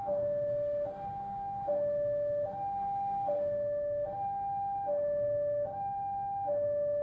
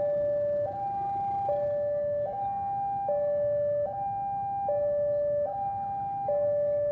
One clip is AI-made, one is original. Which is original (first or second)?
second